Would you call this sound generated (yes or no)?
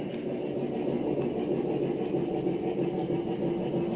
no